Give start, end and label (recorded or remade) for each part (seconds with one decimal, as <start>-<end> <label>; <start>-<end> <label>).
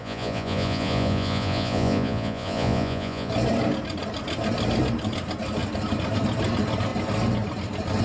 0.0-3.3 remade; 3.3-8.0 recorded